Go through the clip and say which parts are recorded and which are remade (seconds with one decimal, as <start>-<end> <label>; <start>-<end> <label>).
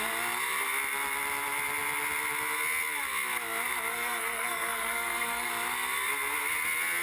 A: 0.0-3.9 recorded; 3.9-5.5 remade; 5.5-7.0 recorded